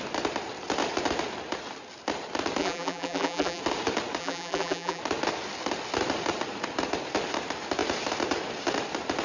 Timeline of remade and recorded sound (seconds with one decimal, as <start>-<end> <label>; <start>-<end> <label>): 0.0-2.6 recorded; 2.6-3.6 remade; 3.6-4.2 recorded; 4.2-5.0 remade; 5.0-9.2 recorded